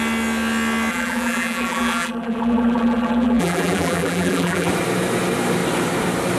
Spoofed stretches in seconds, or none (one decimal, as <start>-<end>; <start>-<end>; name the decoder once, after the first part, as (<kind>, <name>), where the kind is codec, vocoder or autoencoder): 0.9-4.7 (vocoder, BigVGAN v2)